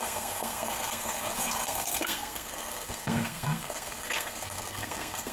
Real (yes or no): no